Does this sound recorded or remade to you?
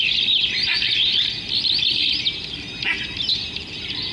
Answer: recorded